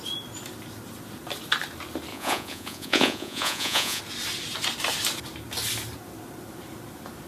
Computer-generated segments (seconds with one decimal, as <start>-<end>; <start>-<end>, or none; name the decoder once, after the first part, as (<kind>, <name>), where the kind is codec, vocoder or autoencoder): 2.1-4.0 (vocoder, Vocos)